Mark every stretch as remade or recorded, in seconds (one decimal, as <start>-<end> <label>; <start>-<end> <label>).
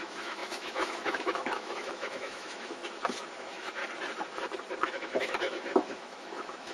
0.0-2.8 remade; 2.8-3.4 recorded; 3.4-3.8 remade; 3.8-4.8 recorded; 4.8-6.7 remade